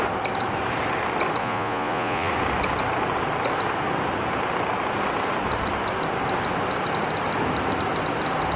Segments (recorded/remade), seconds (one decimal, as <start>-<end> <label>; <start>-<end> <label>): 0.0-1.4 recorded; 1.4-2.3 remade; 2.3-8.6 recorded